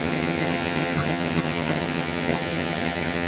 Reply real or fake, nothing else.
fake